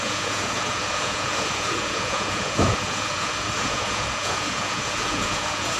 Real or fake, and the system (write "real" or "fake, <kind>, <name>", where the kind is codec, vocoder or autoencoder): fake, vocoder, Vocos